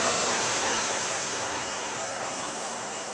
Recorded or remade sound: remade